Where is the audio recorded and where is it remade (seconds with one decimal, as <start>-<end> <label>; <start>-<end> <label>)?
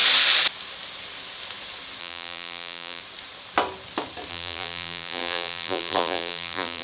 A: 0.0-2.0 recorded; 2.0-3.0 remade; 3.0-4.3 recorded; 4.3-6.8 remade